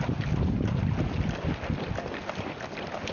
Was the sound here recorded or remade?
recorded